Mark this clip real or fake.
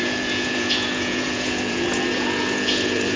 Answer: fake